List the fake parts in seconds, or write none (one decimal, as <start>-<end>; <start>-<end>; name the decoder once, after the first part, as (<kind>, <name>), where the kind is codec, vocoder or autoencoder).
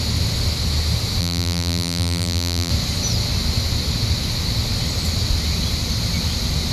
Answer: 1.2-2.7 (vocoder, BigVGAN v2)